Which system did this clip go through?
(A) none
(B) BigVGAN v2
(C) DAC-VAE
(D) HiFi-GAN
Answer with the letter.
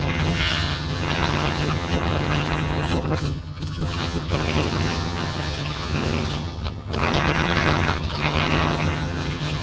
D